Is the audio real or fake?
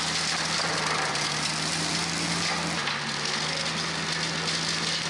real